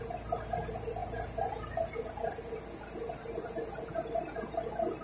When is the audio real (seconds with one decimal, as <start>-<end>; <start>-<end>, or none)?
0.0-5.0